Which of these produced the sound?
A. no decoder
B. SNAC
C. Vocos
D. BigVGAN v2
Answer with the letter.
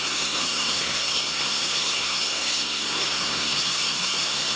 B